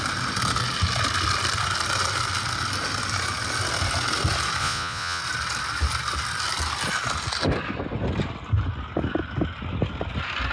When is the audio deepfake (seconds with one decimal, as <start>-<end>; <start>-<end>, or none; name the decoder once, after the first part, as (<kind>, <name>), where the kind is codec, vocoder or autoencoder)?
4.6-5.2 (vocoder, Vocos)